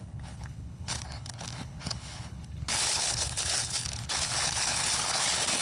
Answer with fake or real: fake